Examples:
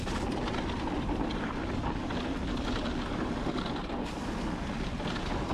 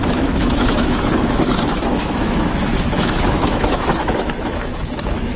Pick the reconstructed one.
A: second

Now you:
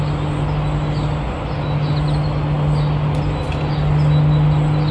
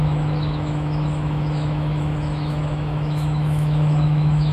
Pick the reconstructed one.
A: second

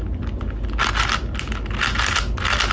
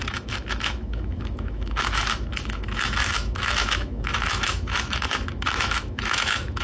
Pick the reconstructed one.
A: second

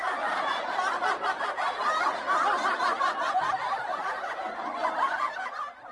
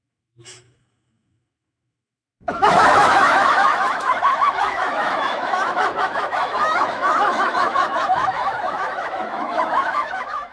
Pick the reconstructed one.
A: second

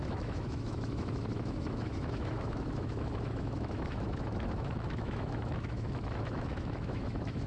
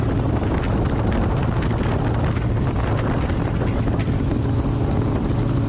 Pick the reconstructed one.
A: first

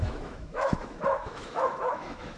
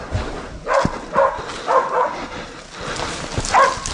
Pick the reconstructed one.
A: first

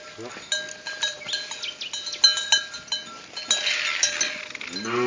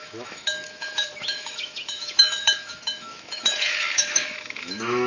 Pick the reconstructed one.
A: second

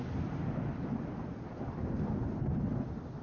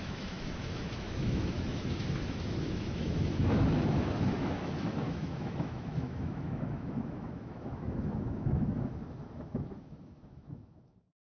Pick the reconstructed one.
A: second